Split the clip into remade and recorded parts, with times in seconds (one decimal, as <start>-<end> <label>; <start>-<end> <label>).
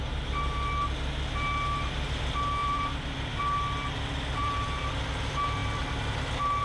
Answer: 0.0-2.6 recorded; 2.6-3.4 remade; 3.4-4.4 recorded; 4.4-4.9 remade; 4.9-6.6 recorded